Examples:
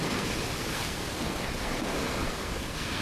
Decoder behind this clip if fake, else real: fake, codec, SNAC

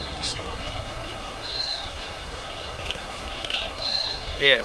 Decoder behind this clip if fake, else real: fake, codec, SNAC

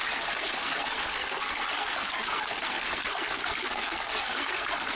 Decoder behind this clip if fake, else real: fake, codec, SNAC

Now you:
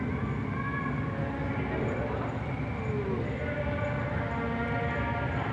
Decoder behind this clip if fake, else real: real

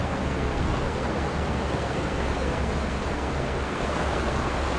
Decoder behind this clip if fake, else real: fake, codec, SNAC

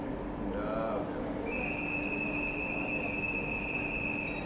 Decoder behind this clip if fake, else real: real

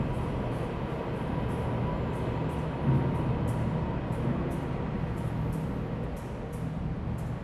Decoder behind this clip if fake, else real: real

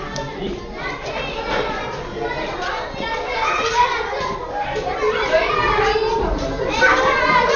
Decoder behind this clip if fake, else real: real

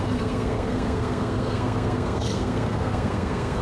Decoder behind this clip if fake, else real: fake, codec, SNAC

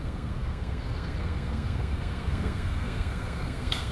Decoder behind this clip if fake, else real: fake, codec, SNAC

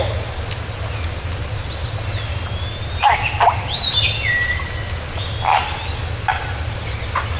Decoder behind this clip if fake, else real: real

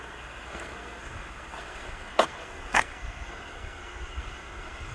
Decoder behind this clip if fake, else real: fake, codec, SNAC